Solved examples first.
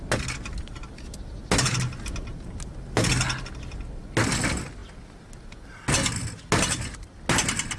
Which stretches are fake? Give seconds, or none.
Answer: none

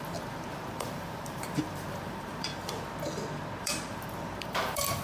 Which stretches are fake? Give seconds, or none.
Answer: 0.0-2.5 (vocoder, BigVGAN v2); 3.6-5.0

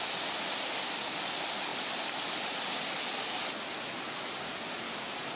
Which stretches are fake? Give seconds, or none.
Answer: none

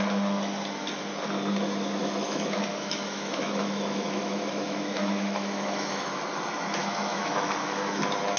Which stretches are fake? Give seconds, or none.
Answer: 2.0-6.1 (autoencoder, DAC-VAE); 6.8-8.0

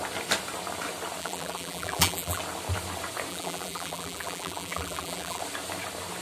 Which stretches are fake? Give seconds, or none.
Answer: 1.2-2.4 (vocoder, BigVGAN v2); 3.3-5.4